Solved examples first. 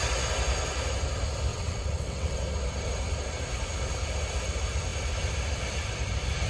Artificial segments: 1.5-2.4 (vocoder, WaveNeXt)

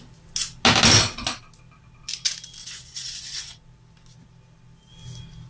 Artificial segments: 2.6-3.6 (vocoder, WaveNeXt)

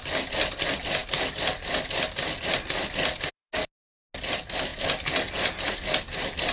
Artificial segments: none

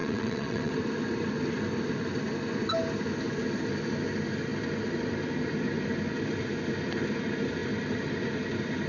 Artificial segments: 0.0-0.7 (vocoder, WaveNeXt)

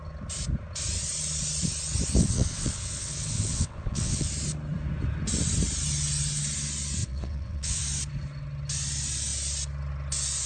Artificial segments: 2.2-4.3 (vocoder, WaveNeXt); 7.0-7.8

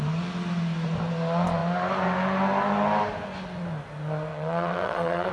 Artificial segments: 4.3-5.3 (vocoder, WaveNeXt)

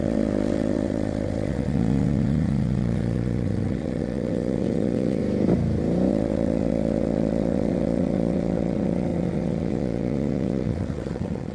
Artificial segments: 0.0-5.2 (vocoder, WaveNeXt); 6.1-11.5

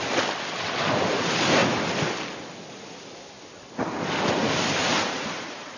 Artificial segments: none